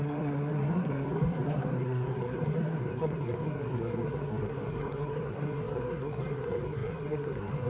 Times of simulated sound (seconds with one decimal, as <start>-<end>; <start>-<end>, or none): 0.0-7.7